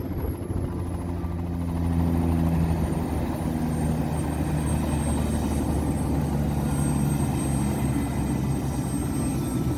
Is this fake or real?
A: real